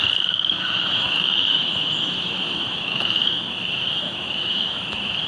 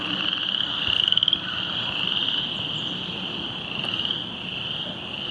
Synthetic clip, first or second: first